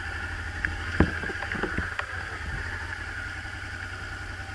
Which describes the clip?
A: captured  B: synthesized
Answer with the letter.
A